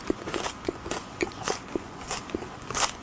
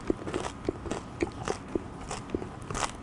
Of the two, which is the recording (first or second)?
second